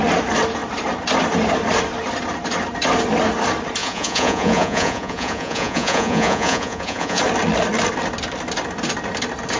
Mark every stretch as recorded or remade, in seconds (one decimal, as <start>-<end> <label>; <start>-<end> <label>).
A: 0.0-3.8 recorded; 3.8-7.2 remade; 7.2-9.6 recorded